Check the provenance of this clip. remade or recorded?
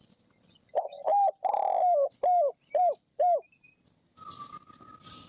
recorded